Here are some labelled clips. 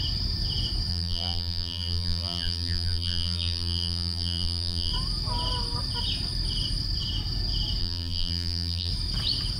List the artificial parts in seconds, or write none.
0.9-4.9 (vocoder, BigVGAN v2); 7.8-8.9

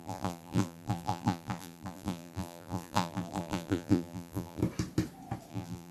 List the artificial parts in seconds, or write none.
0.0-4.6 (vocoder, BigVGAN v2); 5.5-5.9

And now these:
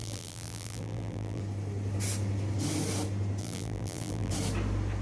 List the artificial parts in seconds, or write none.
0.0-1.4 (vocoder, BigVGAN v2); 3.4-4.3

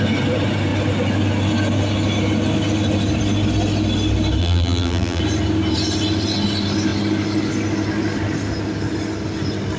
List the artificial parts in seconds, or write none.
4.4-5.2 (vocoder, BigVGAN v2)